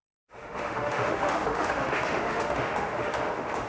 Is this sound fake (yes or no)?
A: yes